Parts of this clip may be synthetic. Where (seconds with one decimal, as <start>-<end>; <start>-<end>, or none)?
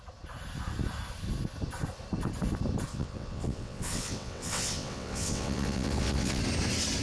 2.9-6.4